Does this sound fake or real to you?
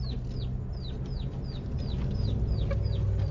real